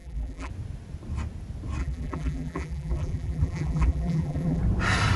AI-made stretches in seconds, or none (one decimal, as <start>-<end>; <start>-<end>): 0.0-0.5; 1.8-4.6